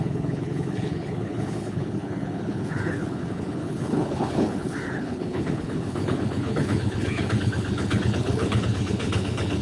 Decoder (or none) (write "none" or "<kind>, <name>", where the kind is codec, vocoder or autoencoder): codec, HILCodec